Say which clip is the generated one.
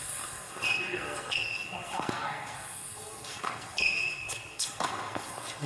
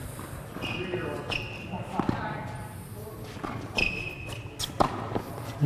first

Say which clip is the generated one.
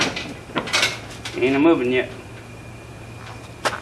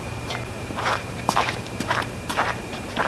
second